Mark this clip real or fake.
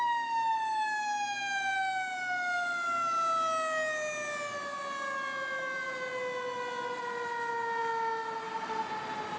real